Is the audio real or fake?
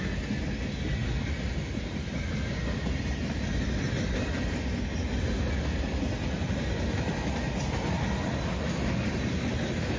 real